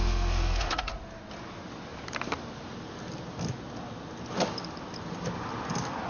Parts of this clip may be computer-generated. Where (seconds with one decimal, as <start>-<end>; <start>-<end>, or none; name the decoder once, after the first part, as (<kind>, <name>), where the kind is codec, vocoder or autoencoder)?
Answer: 0.0-0.9 (codec, SNAC)